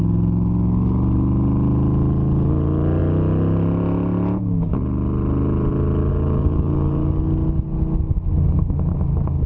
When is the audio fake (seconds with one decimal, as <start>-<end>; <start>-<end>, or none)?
6.1-7.2